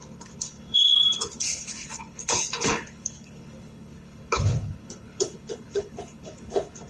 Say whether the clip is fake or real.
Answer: fake